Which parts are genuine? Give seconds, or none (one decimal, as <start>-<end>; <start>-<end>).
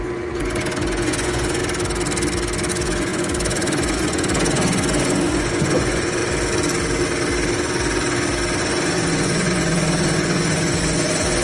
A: 1.6-2.7; 6.2-8.6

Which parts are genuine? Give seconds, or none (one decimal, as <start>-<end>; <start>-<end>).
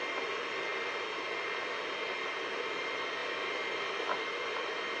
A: 0.0-5.0